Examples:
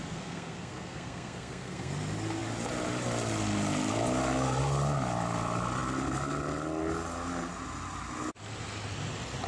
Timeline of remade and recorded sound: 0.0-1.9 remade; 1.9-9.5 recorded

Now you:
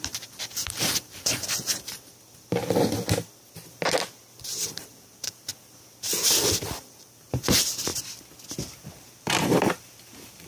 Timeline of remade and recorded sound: 0.0-2.6 remade; 2.6-4.4 recorded; 4.4-5.5 remade; 5.5-6.2 recorded; 6.2-7.9 remade; 7.9-8.7 recorded; 8.7-10.5 remade